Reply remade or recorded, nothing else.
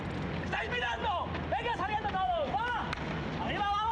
recorded